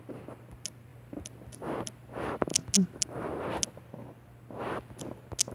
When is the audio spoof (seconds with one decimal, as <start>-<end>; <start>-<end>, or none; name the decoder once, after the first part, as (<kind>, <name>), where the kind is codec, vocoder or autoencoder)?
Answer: none